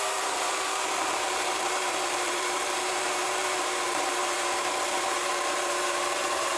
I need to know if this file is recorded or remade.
remade